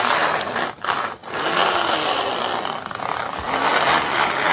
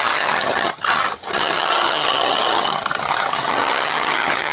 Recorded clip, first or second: first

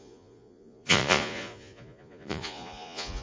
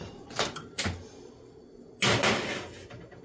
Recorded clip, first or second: second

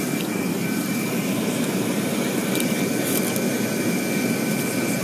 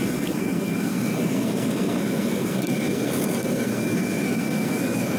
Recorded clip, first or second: first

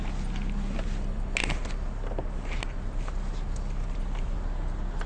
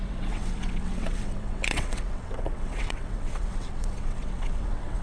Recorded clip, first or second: first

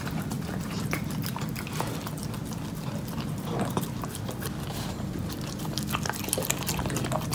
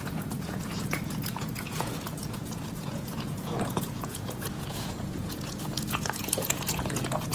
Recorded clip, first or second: first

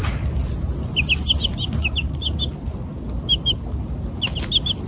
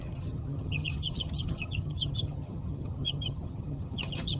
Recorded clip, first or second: first